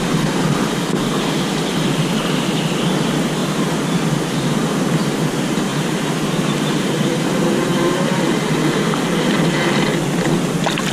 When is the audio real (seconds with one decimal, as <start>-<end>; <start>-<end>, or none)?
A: 0.0-5.7; 8.2-10.9